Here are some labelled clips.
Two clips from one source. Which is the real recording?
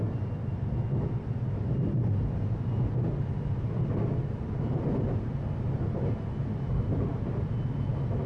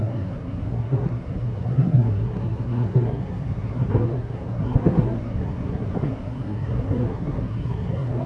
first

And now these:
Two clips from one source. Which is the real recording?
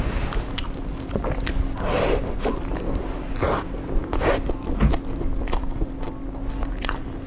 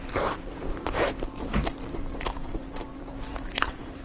first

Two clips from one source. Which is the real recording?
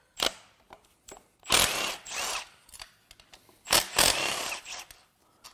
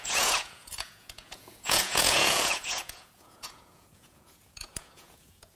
first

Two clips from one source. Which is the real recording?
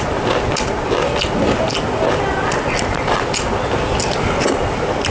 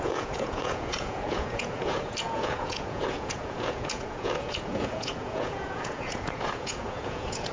first